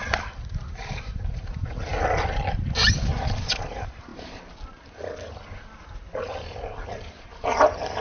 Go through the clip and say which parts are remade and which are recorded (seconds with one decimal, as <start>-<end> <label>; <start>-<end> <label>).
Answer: 0.0-1.9 remade; 1.9-3.2 recorded; 3.2-4.1 remade; 4.1-6.1 recorded; 6.1-8.0 remade